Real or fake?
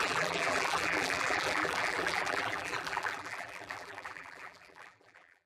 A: fake